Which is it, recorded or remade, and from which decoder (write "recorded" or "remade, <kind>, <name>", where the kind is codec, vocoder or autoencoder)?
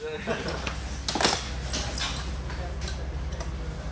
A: recorded